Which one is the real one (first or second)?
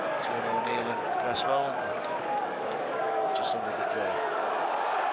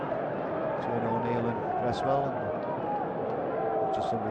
second